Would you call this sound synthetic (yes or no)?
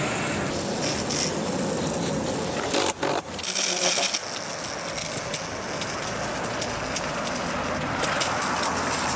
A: no